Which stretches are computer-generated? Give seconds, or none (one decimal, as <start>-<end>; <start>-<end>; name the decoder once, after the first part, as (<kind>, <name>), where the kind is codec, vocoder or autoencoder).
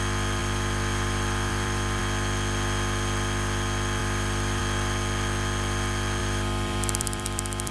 0.4-2.0 (vocoder, BigVGAN v2); 4.0-4.6; 6.2-7.7